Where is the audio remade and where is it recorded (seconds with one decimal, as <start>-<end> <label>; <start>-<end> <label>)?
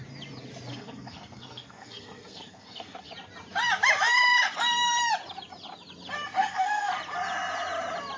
0.0-0.7 recorded; 0.7-3.1 remade; 3.1-6.4 recorded; 6.4-6.9 remade; 6.9-8.2 recorded